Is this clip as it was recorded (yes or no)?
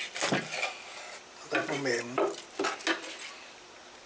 yes